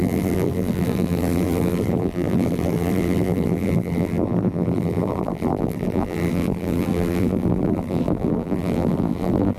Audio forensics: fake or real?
fake